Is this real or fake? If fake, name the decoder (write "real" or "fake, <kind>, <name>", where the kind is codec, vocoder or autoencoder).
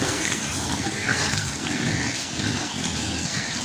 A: fake, codec, SNAC